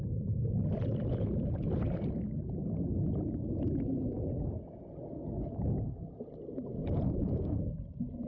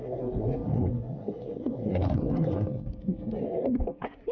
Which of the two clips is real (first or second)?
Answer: first